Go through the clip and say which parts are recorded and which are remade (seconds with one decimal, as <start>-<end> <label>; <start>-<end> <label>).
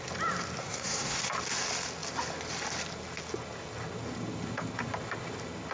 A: 0.0-0.6 recorded; 0.6-1.2 remade; 1.2-5.7 recorded